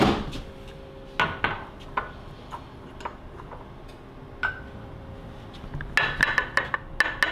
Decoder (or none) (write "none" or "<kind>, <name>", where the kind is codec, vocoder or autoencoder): none